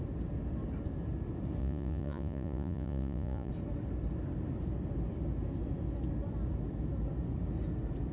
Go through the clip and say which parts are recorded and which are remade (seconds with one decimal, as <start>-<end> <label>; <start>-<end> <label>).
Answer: 0.0-1.6 recorded; 1.6-3.5 remade; 3.5-8.1 recorded